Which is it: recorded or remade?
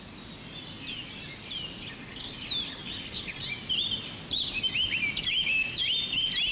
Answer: recorded